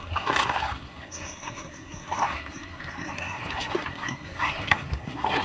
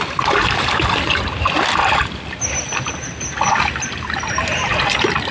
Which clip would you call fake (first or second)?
first